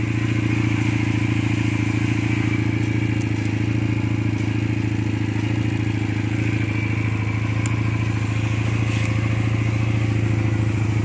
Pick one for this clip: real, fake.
real